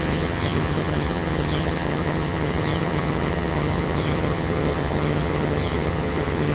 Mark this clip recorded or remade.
remade